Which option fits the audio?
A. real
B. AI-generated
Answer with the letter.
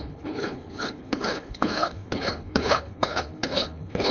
B